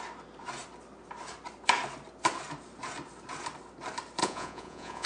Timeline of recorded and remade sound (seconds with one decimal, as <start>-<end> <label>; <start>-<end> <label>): 0.0-4.2 recorded; 4.2-5.1 remade